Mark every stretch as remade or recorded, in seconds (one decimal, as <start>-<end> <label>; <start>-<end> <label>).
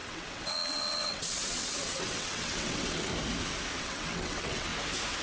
0.0-3.1 remade; 3.1-3.8 recorded; 3.8-4.7 remade; 4.7-5.2 recorded